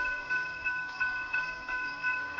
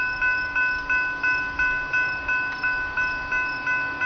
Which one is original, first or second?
second